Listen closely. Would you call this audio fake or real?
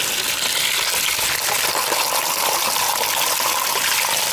real